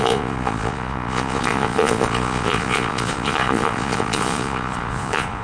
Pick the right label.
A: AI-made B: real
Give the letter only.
A